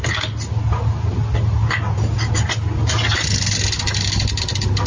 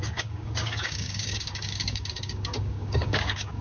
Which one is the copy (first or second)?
second